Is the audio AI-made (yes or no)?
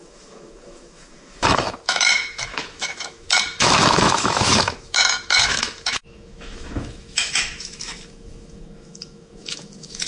yes